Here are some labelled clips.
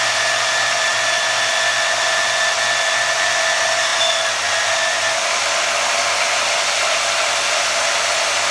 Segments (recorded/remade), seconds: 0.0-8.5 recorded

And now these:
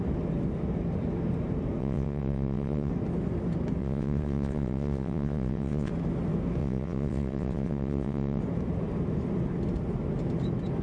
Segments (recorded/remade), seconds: 0.0-1.8 recorded; 1.8-2.9 remade; 2.9-3.8 recorded; 3.8-5.9 remade; 5.9-6.6 recorded; 6.6-8.4 remade; 8.4-10.8 recorded

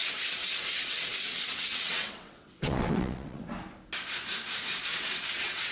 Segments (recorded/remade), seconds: 0.0-3.4 remade; 3.4-4.9 recorded; 4.9-5.7 remade